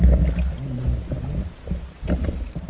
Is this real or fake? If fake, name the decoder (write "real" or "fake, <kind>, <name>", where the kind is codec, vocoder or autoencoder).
real